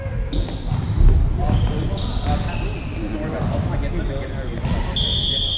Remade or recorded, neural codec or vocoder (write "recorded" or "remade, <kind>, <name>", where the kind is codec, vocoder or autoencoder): recorded